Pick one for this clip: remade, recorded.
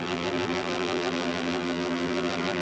remade